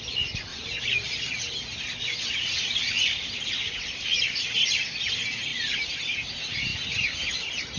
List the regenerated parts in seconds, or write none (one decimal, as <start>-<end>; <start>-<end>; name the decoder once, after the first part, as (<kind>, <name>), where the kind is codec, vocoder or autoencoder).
none